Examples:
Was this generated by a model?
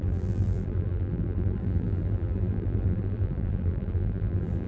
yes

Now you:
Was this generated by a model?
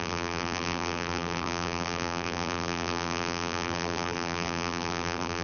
yes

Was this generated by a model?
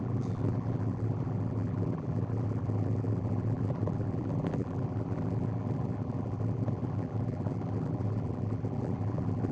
yes